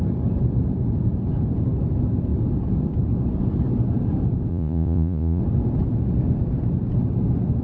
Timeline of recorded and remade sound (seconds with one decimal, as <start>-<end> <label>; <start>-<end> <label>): 0.0-4.5 recorded; 4.5-5.4 remade; 5.4-7.6 recorded